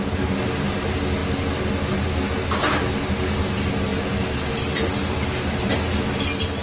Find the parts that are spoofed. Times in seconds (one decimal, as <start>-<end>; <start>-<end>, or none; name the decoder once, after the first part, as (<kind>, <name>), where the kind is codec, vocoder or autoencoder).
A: none

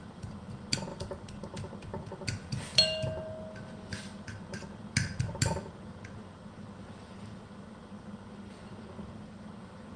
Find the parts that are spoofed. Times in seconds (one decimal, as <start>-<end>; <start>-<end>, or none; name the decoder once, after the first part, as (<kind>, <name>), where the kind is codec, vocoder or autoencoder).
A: none

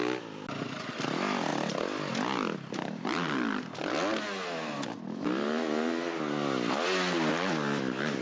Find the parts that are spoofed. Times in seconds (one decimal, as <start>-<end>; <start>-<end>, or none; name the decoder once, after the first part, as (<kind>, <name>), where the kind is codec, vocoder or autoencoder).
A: none

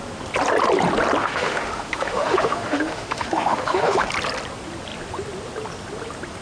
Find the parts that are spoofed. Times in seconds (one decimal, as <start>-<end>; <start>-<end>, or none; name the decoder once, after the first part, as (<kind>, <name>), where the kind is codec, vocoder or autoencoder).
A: 1.2-4.1 (autoencoder, DAC-VAE)

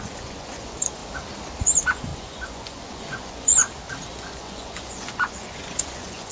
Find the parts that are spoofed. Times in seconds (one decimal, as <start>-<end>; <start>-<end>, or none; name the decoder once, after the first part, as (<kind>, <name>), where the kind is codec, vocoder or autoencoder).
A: 0.0-1.0 (vocoder, Vocos); 1.6-3.6; 4.1-6.3

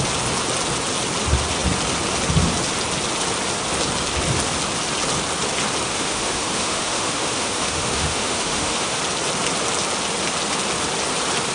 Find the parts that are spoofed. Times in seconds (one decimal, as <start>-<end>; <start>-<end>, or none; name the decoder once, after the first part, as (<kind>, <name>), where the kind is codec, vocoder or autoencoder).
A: 5.9-9.0 (autoencoder, DAC-VAE)

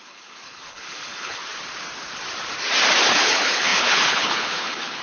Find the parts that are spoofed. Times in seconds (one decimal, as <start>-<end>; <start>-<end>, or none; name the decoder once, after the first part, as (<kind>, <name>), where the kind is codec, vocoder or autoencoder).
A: 0.0-1.4 (codec, HILCodec); 3.1-5.0

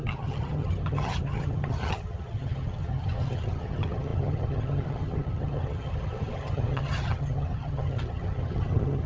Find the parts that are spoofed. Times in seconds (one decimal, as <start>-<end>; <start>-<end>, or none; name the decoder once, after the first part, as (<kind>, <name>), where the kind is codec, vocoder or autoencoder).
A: 0.0-9.1 (vocoder, HiFi-GAN)